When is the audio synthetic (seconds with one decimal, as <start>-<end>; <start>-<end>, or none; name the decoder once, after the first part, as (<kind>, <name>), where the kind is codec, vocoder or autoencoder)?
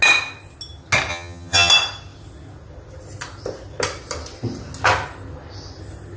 1.1-1.7 (vocoder, HiFi-GAN)